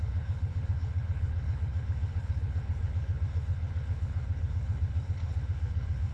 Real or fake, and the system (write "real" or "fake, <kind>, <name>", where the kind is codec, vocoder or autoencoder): fake, codec, HILCodec